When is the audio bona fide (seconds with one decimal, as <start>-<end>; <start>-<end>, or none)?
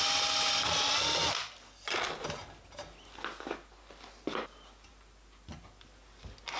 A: 0.0-6.6